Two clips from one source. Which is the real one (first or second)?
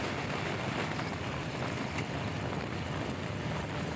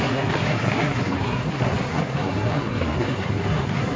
first